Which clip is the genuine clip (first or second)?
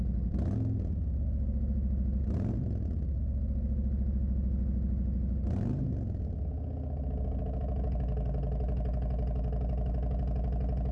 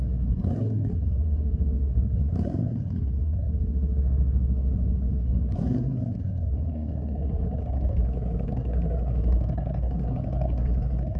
first